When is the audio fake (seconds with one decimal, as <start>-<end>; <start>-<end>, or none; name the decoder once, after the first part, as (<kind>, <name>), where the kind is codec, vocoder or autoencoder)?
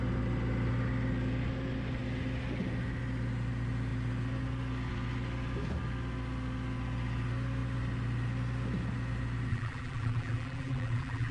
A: 9.5-11.3 (vocoder, BigVGAN v2)